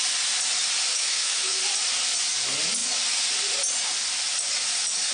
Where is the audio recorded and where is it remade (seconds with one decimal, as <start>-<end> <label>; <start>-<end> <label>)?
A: 0.0-0.9 recorded; 0.9-1.6 remade; 1.6-5.1 recorded